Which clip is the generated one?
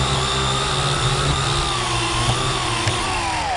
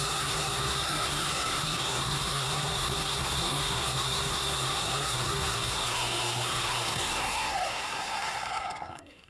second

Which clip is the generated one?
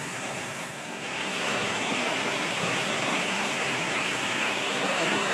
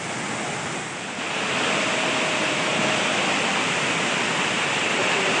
first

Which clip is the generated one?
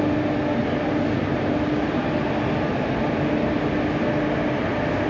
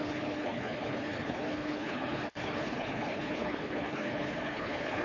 second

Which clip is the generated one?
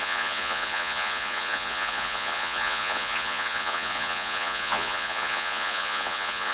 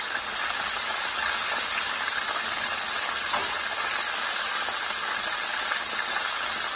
first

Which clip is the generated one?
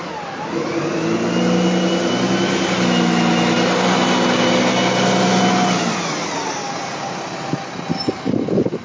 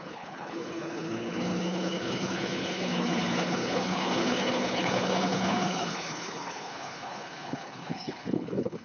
second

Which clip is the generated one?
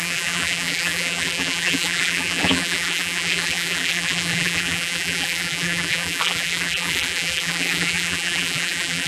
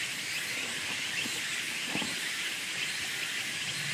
first